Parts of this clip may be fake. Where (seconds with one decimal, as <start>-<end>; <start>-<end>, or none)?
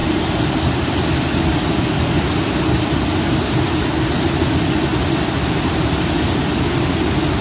none